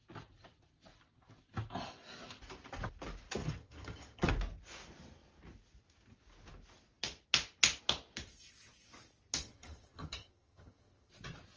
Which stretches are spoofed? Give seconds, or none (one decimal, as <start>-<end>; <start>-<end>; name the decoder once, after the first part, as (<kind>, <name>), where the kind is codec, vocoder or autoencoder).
3.4-4.3 (vocoder, HiFi-GAN); 9.4-11.1